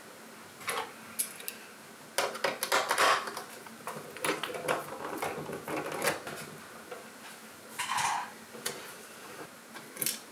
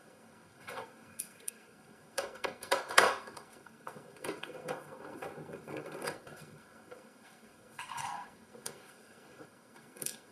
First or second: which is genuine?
first